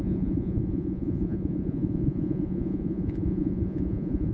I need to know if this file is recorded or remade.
remade